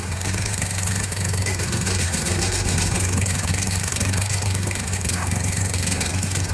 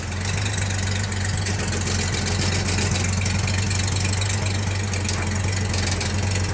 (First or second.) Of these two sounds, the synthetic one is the first